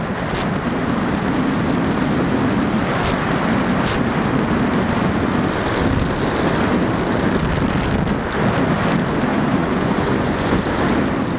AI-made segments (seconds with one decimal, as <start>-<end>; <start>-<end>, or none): 9.3-10.6